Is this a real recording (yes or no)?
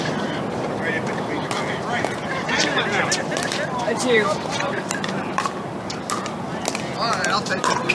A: no